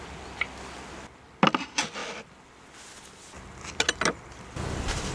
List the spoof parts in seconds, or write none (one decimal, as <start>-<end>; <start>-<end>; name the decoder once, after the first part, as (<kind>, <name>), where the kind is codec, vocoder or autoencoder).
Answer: none